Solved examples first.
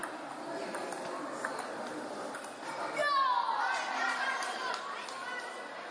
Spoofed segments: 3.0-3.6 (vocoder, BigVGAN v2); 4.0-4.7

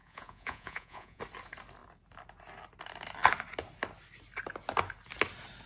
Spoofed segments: 0.0-1.2 (vocoder, Vocos)

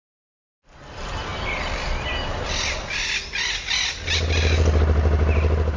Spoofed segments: none

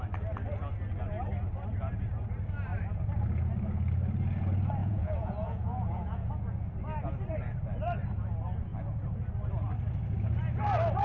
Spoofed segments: 4.8-6.3 (vocoder, Vocos)

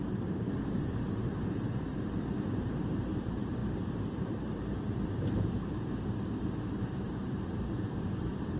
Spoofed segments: 0.0-8.6 (vocoder, BigVGAN v2)

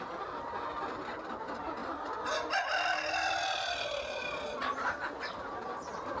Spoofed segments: none

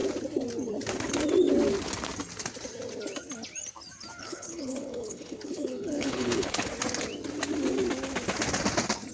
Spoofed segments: 4.2-6.7 (codec, HILCodec)

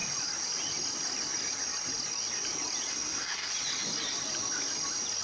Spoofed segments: 2.9-3.5 (codec, SNAC)